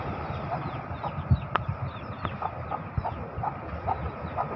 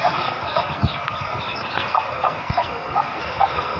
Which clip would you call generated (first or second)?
second